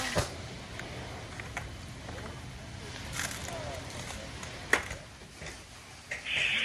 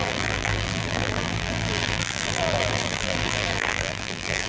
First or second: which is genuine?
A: first